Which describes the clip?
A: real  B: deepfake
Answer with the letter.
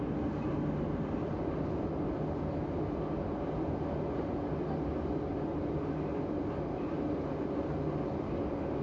A